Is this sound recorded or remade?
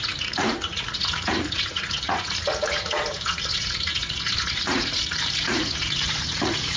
remade